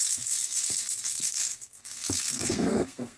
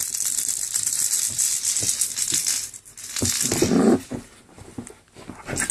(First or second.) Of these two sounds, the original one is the second